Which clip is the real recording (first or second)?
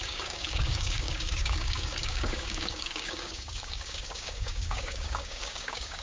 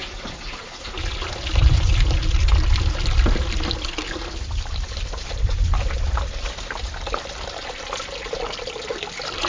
second